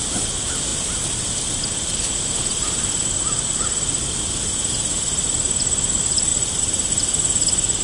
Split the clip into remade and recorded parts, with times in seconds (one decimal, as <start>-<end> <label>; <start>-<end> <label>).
0.0-0.7 recorded; 0.7-2.1 remade; 2.1-6.3 recorded; 6.3-6.9 remade; 6.9-7.8 recorded